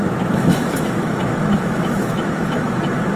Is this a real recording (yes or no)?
no